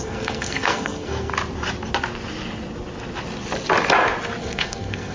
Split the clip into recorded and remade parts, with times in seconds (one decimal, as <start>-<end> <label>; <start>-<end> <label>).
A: 0.0-1.3 remade; 1.3-4.4 recorded; 4.4-5.1 remade